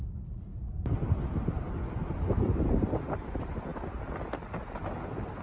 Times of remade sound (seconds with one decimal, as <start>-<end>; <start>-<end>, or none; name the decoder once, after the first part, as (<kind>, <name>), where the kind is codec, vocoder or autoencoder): none